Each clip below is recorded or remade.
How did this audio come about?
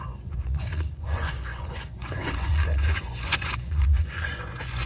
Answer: remade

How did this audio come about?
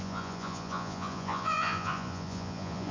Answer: remade